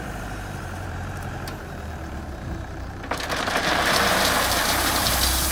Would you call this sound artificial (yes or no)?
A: yes